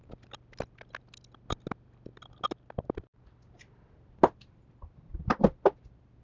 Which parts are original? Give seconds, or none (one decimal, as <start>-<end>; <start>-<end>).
0.0-6.2